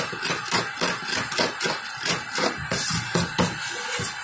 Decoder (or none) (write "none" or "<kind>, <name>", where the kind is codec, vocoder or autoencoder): none